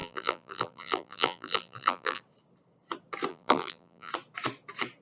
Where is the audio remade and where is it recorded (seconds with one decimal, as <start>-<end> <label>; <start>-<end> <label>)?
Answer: 0.0-2.2 remade; 2.2-3.3 recorded; 3.3-4.1 remade; 4.1-5.0 recorded